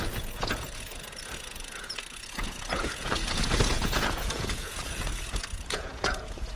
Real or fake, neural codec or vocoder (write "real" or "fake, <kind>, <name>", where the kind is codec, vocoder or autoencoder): fake, vocoder, Vocos